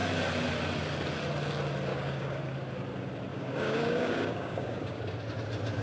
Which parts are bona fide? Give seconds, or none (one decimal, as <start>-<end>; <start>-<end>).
0.0-1.9; 2.4-3.3; 5.0-5.8

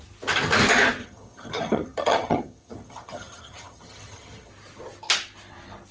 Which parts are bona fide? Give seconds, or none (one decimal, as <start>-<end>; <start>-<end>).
0.0-1.0; 4.5-5.9